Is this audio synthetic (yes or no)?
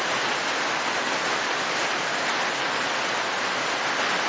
no